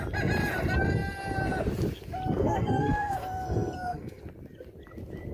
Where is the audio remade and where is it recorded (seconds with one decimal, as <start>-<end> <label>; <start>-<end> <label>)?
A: 0.0-2.4 recorded; 2.4-4.2 remade; 4.2-5.3 recorded